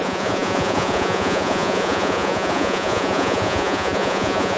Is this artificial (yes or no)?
yes